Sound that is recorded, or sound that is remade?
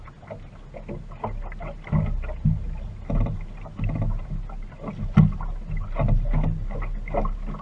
recorded